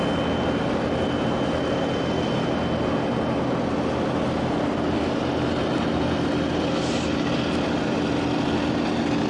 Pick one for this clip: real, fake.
real